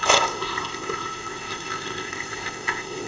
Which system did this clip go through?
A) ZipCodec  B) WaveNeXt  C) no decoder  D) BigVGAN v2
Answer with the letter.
A